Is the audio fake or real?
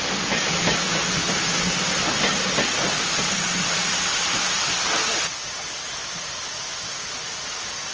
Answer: real